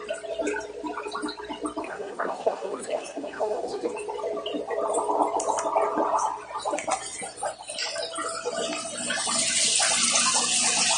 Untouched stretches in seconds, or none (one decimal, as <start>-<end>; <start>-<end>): 0.0-1.8; 3.9-11.0